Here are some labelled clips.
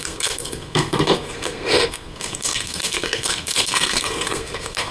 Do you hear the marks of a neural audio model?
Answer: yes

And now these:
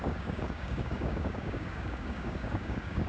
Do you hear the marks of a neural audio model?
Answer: yes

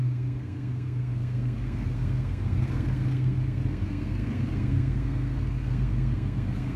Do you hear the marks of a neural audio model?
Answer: yes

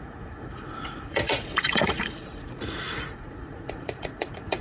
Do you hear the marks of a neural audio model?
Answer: yes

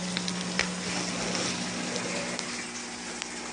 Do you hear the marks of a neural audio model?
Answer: no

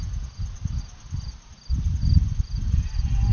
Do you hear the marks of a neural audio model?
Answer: no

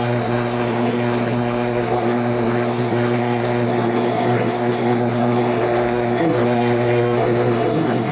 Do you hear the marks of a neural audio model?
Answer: yes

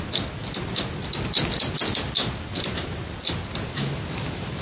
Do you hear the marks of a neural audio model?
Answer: no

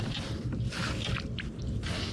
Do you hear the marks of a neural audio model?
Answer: no